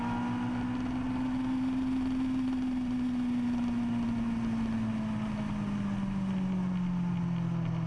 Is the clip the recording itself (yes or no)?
yes